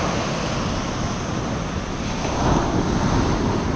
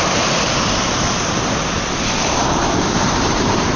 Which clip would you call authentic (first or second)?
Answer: first